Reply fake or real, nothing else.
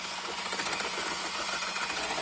fake